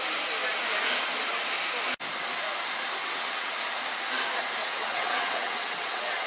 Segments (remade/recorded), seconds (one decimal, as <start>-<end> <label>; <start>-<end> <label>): 0.0-3.0 recorded; 3.0-3.5 remade; 3.5-4.6 recorded; 4.6-6.3 remade